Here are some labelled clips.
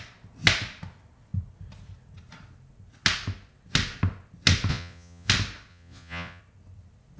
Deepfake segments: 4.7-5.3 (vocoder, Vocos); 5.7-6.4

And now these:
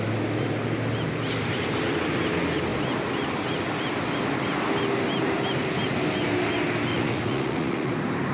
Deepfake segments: 6.9-7.9 (vocoder, Vocos)

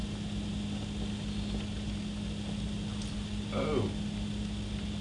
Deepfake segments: none

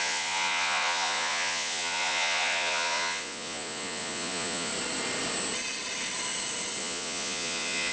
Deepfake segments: 0.0-4.7 (vocoder, Vocos); 6.8-7.9

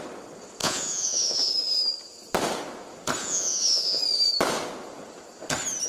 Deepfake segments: 0.6-1.5 (vocoder, Vocos); 3.2-4.0